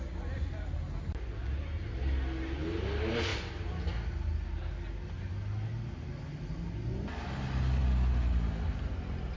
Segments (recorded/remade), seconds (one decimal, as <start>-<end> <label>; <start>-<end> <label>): 0.0-9.4 recorded